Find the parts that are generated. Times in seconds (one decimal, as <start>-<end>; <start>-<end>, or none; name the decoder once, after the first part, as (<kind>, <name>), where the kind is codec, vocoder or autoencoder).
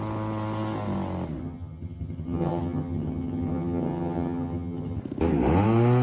1.4-5.0 (vocoder, HiFi-GAN)